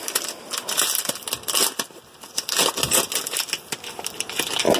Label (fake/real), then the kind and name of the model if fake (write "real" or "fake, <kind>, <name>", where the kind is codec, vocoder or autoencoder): real